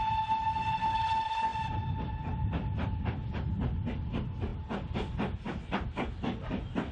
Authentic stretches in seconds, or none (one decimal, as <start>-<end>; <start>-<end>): 0.0-6.9